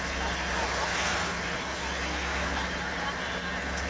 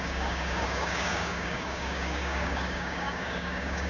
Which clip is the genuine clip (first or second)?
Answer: first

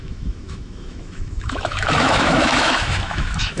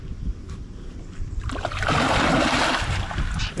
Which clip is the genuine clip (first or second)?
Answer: second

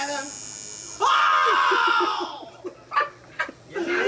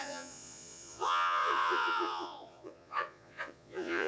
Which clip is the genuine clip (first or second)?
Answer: first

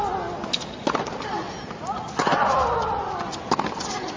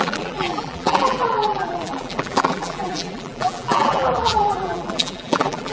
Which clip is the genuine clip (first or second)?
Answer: first